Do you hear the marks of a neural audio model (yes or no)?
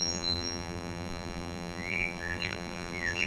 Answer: yes